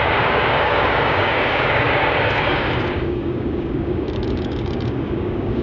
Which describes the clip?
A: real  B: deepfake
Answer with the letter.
B